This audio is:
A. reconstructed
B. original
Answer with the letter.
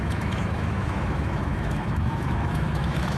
A